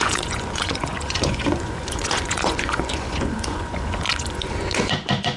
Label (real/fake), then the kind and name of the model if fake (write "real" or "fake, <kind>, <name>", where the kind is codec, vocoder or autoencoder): fake, vocoder, Vocos